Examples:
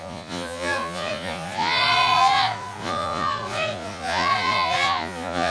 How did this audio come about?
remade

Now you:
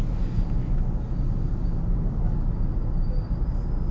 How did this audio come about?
recorded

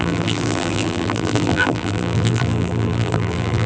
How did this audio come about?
remade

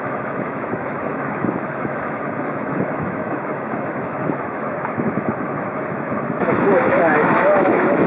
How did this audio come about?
remade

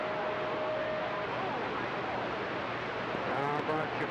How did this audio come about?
recorded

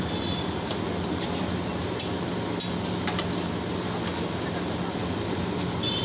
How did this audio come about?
recorded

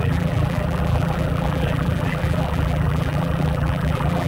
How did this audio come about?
remade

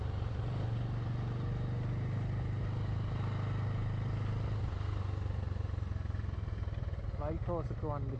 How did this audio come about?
recorded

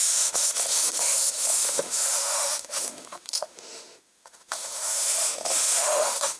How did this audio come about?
remade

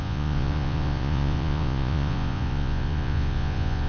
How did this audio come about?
remade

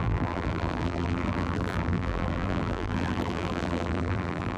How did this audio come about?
remade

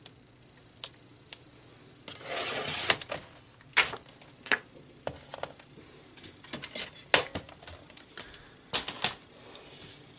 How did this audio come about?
recorded